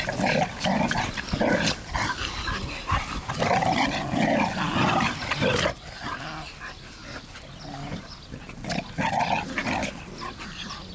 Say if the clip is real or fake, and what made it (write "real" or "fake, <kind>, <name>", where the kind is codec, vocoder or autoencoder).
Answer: real